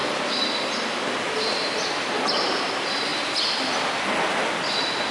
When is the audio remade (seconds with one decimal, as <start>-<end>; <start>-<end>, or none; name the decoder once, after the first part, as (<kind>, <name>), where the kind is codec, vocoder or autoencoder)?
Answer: none